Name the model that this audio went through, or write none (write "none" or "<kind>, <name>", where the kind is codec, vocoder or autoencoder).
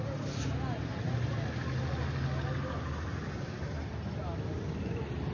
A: none